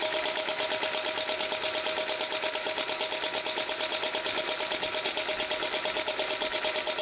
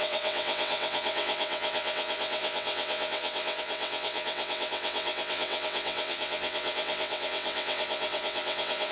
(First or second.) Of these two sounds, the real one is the first